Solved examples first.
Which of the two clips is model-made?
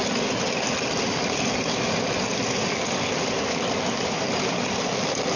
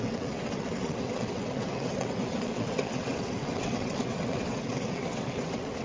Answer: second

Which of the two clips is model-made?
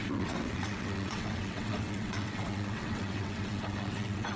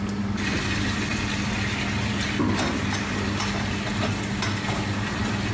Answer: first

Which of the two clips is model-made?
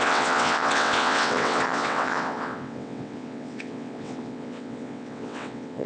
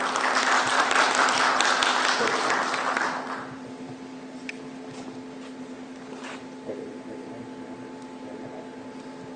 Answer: first